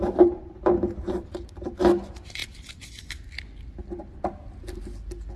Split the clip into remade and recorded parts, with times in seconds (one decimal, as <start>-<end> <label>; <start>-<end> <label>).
0.0-5.4 recorded